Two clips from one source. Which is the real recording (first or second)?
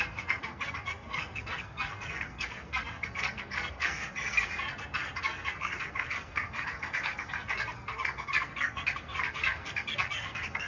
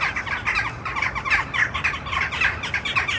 second